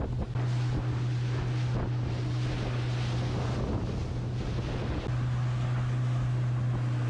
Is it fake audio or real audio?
real